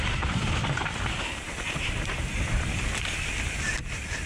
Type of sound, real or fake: fake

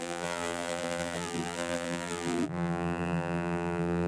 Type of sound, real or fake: fake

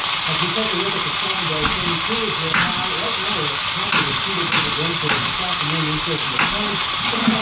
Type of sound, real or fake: real